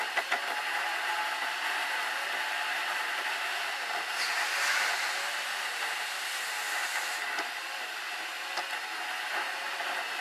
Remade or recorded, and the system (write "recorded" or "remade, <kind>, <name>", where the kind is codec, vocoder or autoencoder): recorded